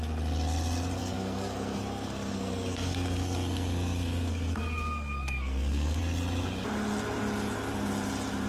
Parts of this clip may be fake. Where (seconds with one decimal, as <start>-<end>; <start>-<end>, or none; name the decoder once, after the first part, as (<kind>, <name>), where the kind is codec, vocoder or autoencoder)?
1.0-6.0 (codec, SNAC)